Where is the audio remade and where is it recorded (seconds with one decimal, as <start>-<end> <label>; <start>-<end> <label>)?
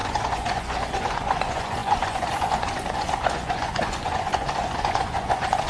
0.0-5.7 remade